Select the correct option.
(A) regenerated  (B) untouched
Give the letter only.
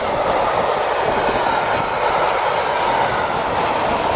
B